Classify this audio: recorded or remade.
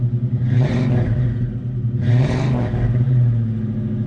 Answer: recorded